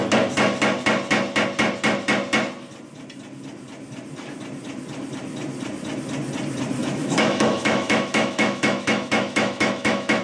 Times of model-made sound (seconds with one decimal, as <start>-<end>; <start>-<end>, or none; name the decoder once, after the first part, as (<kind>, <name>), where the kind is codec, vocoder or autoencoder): 6.8-10.2 (autoencoder, DAC-VAE)